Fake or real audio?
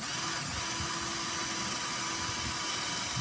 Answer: real